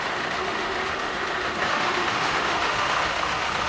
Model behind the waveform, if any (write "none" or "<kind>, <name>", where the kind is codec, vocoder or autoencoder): autoencoder, DAC-VAE